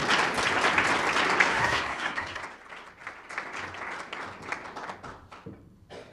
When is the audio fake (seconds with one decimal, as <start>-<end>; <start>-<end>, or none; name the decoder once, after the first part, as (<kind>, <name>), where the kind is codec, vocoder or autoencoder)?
1.5-2.4 (codec, SNAC)